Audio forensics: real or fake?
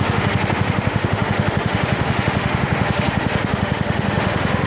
fake